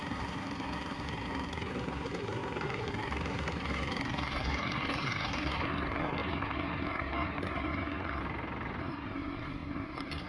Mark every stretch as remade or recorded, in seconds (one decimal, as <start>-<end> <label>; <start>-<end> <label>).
0.0-8.2 remade; 8.2-8.8 recorded; 8.8-10.3 remade